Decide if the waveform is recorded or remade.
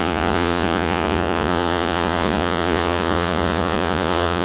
remade